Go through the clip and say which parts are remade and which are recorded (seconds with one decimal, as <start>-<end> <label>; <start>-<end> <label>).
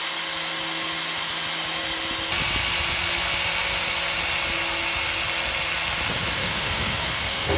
0.0-6.4 recorded; 6.4-7.6 remade